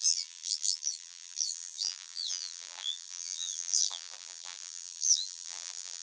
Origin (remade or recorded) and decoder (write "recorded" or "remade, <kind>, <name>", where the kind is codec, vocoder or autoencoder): remade, vocoder, BigVGAN v2